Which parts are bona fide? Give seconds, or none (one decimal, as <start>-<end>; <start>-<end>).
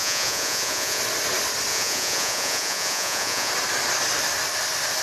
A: 1.0-1.7; 3.5-5.0